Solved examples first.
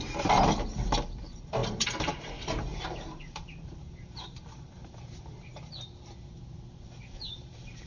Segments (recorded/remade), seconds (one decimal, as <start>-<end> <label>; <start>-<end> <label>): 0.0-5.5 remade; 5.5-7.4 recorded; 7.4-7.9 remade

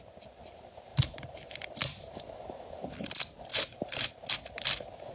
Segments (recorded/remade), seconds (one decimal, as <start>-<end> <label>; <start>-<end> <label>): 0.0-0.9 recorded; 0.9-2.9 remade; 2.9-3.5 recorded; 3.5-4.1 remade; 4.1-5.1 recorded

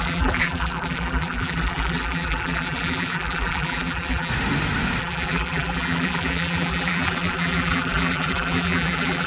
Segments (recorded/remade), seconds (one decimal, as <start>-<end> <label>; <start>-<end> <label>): 0.0-4.3 remade; 4.3-5.0 recorded; 5.0-9.3 remade